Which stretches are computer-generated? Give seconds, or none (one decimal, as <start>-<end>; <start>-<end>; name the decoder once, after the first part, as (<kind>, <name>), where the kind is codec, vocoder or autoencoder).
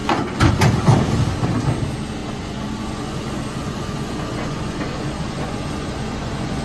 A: 0.0-0.5 (vocoder, Vocos); 2.2-6.6